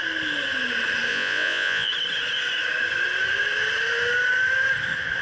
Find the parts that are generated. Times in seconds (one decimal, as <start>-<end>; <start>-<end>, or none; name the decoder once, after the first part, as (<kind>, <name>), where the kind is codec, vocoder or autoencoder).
1.1-1.9 (vocoder, Vocos)